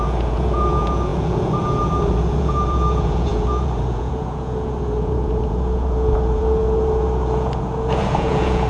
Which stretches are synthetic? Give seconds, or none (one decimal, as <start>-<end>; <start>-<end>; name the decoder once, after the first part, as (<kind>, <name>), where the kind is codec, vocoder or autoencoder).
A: 0.0-8.7 (vocoder, Vocos)